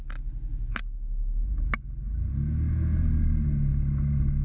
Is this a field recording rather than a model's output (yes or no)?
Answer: yes